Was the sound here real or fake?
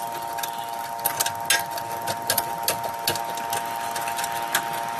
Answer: real